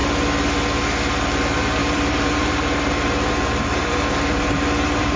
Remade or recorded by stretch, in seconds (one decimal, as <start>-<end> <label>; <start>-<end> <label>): 0.0-1.8 recorded; 1.8-5.2 remade

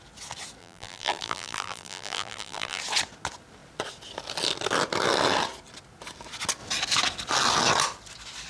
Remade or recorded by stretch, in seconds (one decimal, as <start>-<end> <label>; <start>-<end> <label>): 0.0-0.6 recorded; 0.6-2.8 remade; 2.8-8.5 recorded